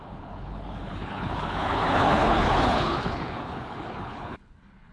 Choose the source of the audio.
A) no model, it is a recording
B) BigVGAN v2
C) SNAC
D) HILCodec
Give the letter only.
D